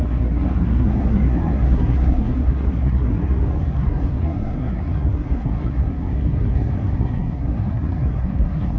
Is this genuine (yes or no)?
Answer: no